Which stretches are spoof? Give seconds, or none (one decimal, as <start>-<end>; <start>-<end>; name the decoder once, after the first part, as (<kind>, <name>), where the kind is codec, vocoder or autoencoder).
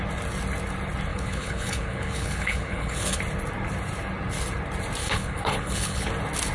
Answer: 1.1-3.2 (codec, HILCodec); 5.0-6.1